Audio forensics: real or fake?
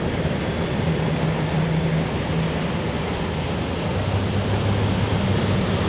real